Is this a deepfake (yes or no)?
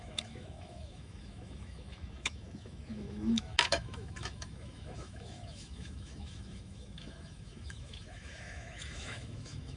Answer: yes